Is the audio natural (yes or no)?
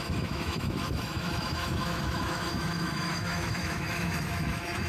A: no